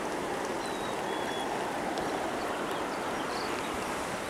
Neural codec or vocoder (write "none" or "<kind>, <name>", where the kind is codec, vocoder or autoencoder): none